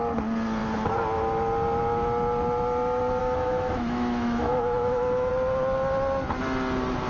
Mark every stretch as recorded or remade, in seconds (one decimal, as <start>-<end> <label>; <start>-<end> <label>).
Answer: 0.0-3.2 recorded; 3.2-5.3 remade; 5.3-7.1 recorded